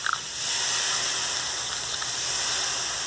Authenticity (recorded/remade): recorded